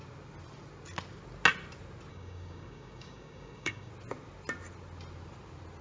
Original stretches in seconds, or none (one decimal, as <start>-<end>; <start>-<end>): 0.0-2.1; 3.9-5.8